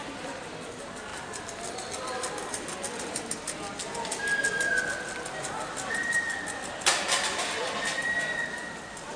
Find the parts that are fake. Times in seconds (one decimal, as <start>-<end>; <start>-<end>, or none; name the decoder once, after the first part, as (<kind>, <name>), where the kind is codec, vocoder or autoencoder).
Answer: none